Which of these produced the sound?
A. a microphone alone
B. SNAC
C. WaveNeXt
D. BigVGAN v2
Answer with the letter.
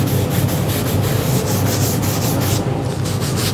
D